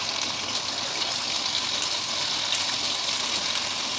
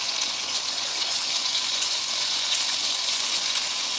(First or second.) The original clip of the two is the first